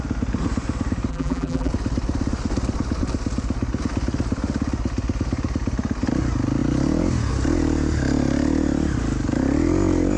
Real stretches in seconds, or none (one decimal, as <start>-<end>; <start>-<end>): 0.0-1.1; 1.7-10.2